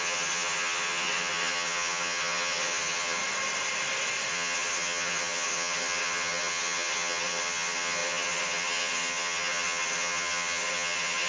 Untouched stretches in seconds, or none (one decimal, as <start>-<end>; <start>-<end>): 3.2-4.3